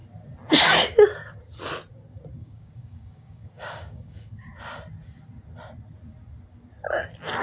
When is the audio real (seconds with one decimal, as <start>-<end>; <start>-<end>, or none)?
0.0-2.4; 4.5-7.4

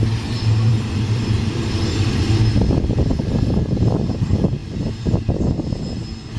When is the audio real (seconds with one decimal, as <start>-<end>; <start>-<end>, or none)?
0.0-0.7; 3.3-6.4

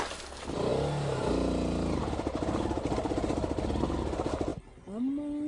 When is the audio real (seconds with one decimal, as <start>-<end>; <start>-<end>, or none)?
0.0-5.5